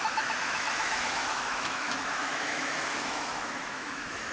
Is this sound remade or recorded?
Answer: remade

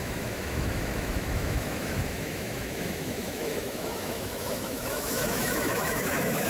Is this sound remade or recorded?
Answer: remade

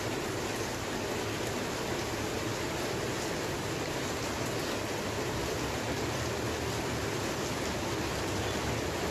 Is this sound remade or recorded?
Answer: recorded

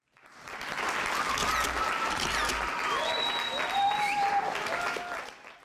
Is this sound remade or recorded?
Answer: recorded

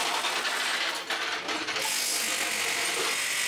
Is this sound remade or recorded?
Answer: recorded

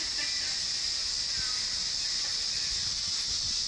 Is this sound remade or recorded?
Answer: recorded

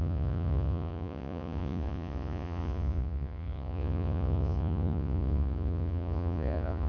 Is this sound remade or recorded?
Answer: remade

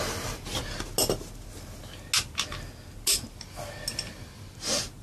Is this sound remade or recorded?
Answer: recorded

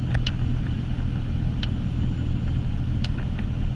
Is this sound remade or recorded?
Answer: recorded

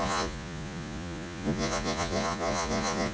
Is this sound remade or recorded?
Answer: remade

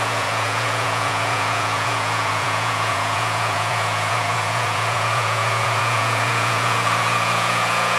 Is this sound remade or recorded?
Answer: remade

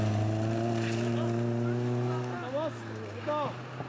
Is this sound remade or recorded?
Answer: recorded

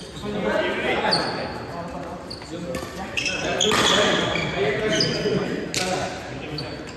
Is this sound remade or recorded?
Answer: recorded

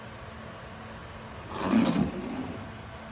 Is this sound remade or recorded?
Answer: recorded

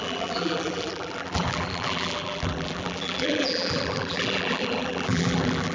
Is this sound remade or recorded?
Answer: remade